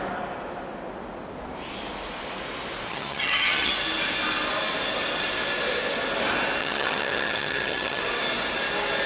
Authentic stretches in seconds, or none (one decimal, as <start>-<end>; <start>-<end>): 0.0-2.9; 3.7-6.6; 8.0-9.1